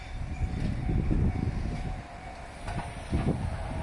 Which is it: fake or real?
real